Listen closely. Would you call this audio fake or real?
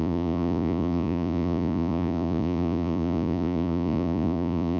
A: fake